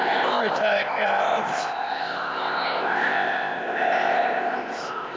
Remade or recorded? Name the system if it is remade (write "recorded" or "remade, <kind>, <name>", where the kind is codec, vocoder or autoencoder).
remade, codec, ZipCodec